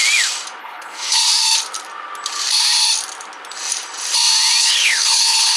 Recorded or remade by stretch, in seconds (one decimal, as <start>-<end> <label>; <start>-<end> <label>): 0.0-0.6 recorded; 0.6-1.2 remade; 1.2-4.6 recorded; 4.6-5.6 remade